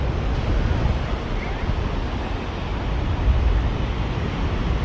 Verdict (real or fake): real